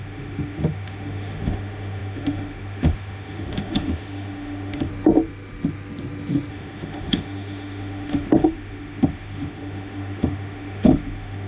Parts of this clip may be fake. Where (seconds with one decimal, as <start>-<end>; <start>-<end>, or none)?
0.0-4.9; 6.5-11.5